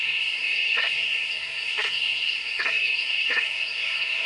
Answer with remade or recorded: remade